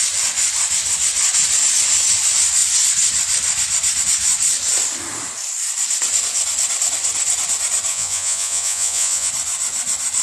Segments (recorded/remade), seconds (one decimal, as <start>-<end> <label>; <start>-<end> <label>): 0.0-7.9 recorded; 7.9-9.3 remade; 9.3-10.2 recorded